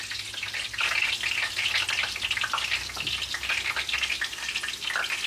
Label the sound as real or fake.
real